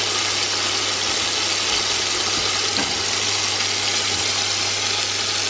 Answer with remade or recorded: recorded